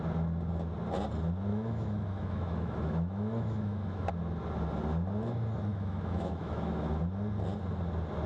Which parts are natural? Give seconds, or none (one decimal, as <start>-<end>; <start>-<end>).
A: 0.0-1.5; 4.1-5.7; 7.0-8.3